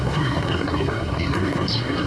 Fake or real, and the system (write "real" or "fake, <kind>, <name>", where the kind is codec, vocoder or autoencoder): fake, codec, SNAC